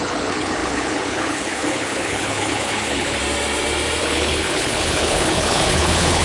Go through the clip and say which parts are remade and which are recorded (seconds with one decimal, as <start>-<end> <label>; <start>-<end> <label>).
0.0-3.2 remade; 3.2-4.0 recorded; 4.0-6.2 remade